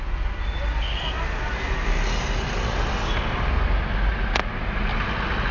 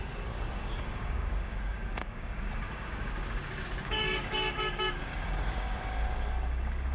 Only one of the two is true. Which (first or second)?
first